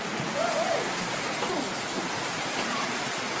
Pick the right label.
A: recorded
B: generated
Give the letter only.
B